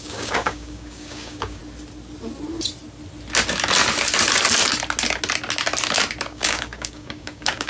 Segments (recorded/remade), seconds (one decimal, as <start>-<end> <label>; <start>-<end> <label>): 0.0-1.6 remade; 1.6-6.2 recorded; 6.2-7.7 remade